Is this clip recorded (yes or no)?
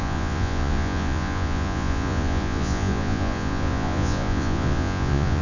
no